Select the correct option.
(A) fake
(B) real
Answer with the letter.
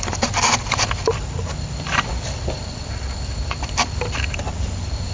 A